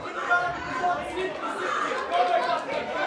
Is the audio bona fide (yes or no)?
yes